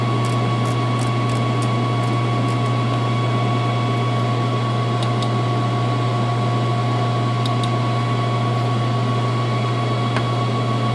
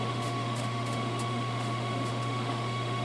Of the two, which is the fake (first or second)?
second